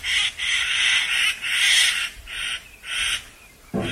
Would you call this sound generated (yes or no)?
no